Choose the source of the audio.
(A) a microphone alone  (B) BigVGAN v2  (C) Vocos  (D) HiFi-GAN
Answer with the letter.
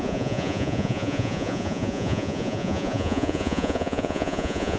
C